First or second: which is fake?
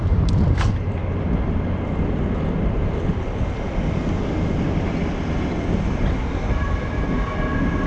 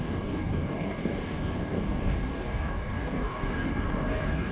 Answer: second